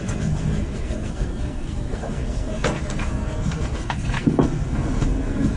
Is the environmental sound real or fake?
fake